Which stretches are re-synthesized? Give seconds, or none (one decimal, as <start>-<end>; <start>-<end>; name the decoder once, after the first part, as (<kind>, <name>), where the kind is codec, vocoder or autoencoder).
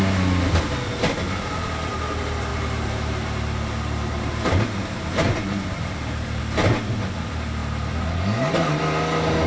2.5-6.4 (vocoder, BigVGAN v2); 7.6-8.2